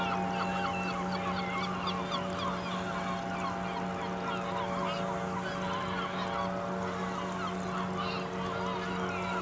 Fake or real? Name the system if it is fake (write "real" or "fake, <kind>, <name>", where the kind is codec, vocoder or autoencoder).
real